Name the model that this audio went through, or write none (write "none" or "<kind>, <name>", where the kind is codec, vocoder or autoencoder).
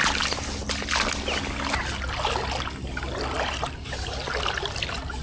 none